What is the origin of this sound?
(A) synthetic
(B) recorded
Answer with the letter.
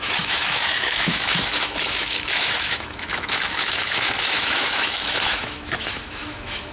A